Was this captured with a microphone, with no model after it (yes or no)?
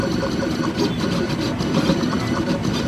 yes